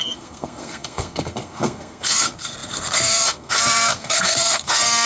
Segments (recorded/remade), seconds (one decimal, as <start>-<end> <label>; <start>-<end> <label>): 0.0-5.1 remade